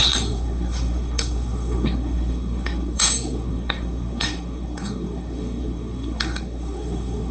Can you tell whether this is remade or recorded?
remade